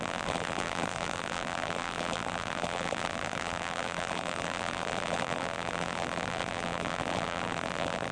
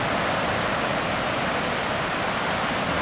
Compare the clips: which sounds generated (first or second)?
first